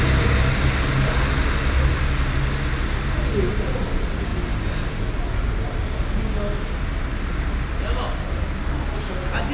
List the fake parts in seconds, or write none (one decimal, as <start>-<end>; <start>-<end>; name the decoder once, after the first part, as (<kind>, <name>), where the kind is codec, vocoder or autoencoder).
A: 4.3-5.0 (vocoder, BigVGAN v2)